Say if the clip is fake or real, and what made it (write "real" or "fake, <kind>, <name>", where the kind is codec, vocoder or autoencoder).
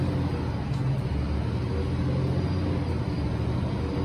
real